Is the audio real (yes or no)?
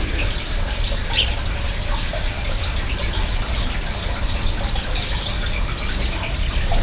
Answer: yes